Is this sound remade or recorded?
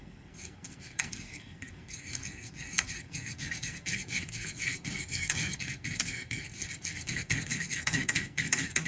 remade